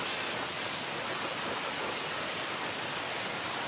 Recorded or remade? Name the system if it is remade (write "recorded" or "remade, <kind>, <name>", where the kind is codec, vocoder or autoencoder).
recorded